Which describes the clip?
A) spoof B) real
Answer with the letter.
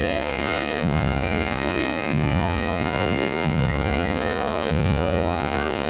A